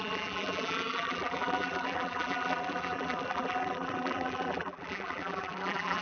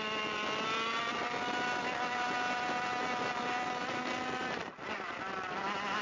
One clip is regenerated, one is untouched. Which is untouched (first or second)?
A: second